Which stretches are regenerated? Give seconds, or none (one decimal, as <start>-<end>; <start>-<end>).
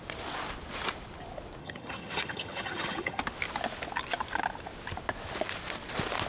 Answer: 1.6-3.2